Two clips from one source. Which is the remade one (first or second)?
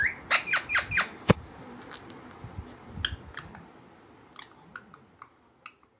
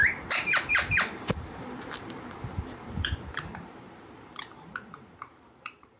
second